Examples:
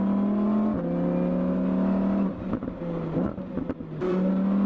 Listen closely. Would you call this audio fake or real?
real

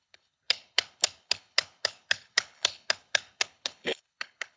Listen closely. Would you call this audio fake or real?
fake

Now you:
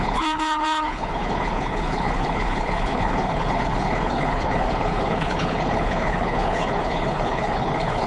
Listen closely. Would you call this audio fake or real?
fake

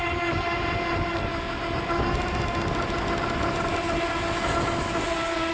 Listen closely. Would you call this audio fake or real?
real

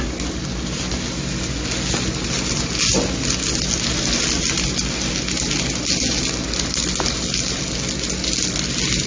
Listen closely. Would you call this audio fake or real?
real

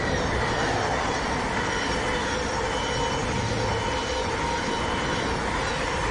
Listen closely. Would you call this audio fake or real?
real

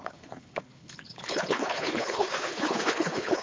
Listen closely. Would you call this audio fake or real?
fake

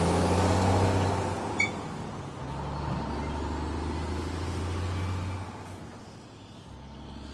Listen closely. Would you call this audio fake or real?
real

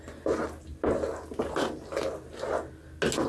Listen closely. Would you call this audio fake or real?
real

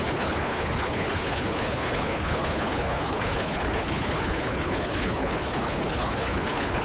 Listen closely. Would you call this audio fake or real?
fake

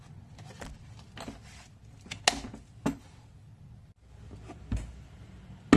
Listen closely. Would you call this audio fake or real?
real